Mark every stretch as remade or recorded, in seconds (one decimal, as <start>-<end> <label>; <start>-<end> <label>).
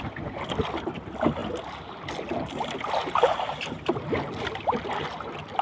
0.0-3.0 recorded; 3.0-4.2 remade; 4.2-5.6 recorded